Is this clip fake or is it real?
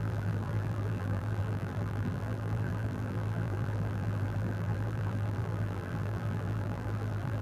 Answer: fake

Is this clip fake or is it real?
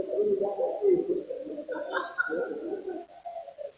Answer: real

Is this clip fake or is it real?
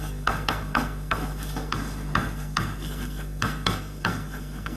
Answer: fake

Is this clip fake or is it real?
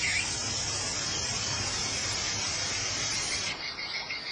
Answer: fake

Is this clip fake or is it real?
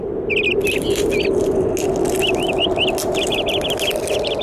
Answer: real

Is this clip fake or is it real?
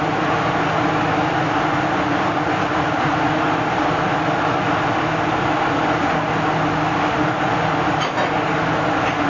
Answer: real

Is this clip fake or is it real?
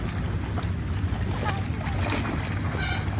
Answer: real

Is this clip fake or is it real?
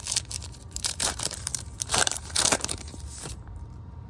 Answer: fake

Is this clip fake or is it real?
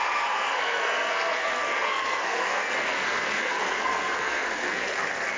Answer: fake